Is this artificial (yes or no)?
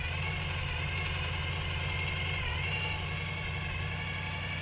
no